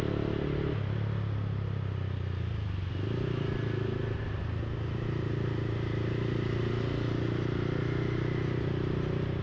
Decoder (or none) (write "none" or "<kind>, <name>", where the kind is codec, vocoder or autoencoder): none